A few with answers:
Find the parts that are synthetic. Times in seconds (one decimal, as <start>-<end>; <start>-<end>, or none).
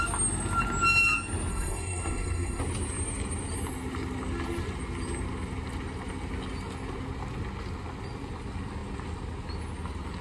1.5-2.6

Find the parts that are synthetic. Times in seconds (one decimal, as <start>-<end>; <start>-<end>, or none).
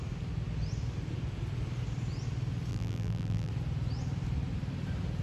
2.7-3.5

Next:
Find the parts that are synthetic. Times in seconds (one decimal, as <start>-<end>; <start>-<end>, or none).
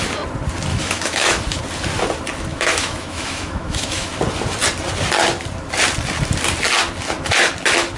0.7-1.6; 2.5-4.1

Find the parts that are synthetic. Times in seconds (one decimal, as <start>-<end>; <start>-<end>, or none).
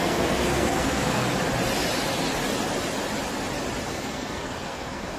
0.0-1.3; 3.9-5.2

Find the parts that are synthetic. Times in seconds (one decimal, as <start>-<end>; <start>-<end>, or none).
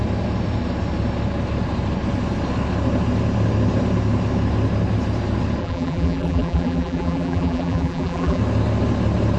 5.6-8.4